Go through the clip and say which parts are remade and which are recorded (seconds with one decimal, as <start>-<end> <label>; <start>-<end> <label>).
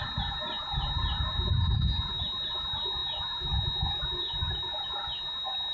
0.0-5.7 recorded